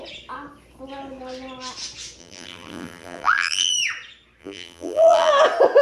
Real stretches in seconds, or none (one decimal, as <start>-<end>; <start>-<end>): 0.0-2.2; 3.7-4.4; 5.3-5.8